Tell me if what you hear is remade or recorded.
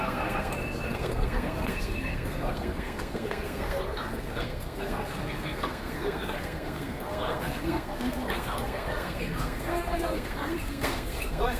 remade